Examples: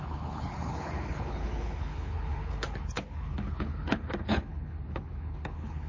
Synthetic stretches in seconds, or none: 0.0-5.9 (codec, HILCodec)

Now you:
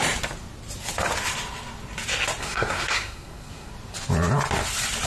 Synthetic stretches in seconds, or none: 2.4-3.7 (codec, SNAC)

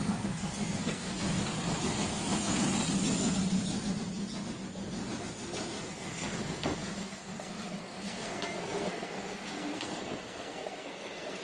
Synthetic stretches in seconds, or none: 0.0-1.1 (codec, SNAC); 5.9-11.4

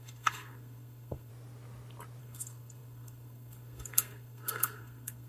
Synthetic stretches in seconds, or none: 0.0-1.3 (codec, SNAC); 2.2-5.3

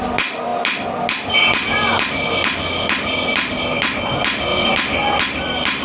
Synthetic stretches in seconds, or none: none

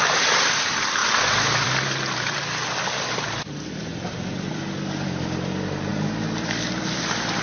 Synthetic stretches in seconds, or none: 0.0-7.4 (vocoder, BigVGAN v2)

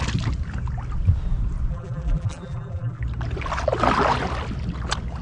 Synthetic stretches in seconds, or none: 1.7-3.0 (vocoder, BigVGAN v2)

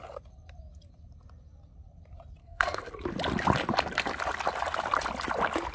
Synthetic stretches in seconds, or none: 2.4-2.9 (codec, SNAC)